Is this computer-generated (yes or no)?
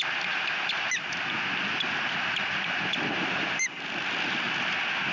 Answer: no